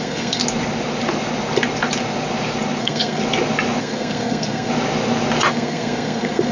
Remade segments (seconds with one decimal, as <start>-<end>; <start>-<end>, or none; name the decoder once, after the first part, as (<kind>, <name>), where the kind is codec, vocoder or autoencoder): 0.0-0.4 (codec, SNAC); 2.8-3.2; 3.8-4.7; 5.5-6.5